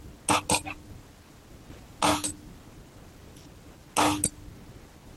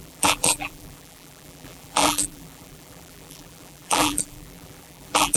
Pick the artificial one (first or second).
second